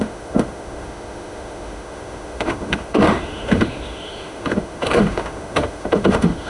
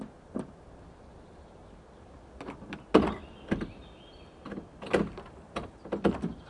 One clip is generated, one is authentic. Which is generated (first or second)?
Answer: first